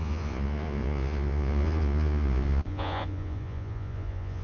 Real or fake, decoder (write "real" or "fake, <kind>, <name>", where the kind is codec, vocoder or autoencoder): fake, vocoder, Vocos